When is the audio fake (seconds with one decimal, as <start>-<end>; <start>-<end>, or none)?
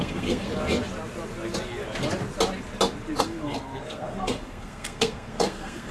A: 0.0-0.5; 3.2-5.9